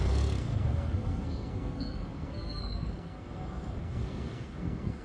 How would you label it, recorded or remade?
remade